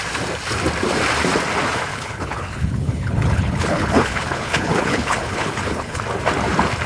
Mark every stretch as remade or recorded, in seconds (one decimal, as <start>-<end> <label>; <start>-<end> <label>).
0.0-1.9 recorded; 1.9-6.0 remade; 6.0-6.9 recorded